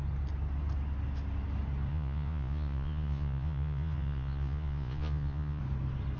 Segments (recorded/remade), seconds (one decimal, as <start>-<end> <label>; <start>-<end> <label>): 0.0-1.9 recorded; 1.9-5.6 remade; 5.6-6.2 recorded